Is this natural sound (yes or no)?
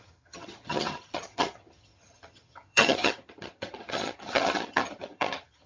no